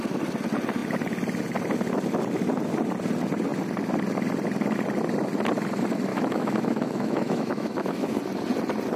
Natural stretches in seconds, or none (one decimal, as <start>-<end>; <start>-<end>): 0.0-6.1; 8.2-9.0